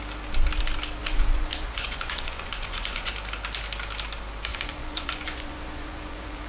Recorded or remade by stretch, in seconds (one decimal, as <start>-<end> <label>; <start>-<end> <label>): 0.0-1.0 recorded; 1.0-3.1 remade; 3.1-4.5 recorded; 4.5-6.5 remade